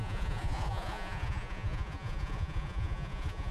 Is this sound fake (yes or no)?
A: yes